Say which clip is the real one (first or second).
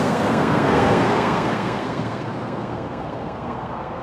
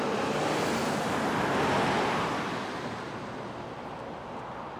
second